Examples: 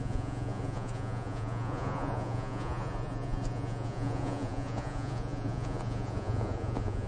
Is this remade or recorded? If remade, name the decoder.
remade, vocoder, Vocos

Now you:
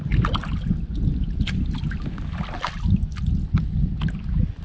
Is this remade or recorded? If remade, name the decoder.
recorded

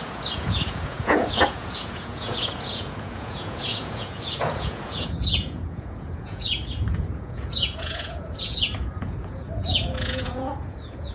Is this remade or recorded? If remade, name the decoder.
remade, vocoder, Vocos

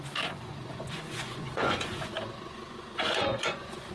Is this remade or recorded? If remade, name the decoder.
remade, vocoder, Vocos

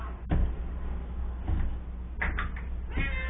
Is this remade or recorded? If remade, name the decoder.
recorded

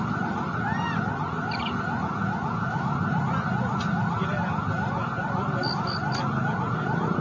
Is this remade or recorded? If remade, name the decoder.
recorded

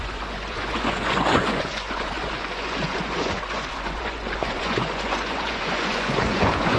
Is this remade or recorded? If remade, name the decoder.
remade, vocoder, Vocos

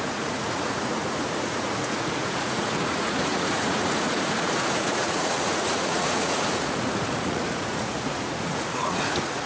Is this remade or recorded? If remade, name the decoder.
remade, vocoder, Vocos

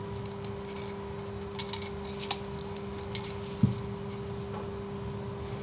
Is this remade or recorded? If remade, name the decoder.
recorded